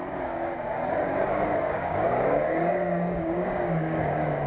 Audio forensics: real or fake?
fake